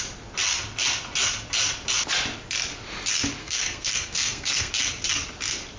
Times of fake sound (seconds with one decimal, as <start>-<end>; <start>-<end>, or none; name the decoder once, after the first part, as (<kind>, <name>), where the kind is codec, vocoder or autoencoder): 3.4-4.7 (codec, SNAC)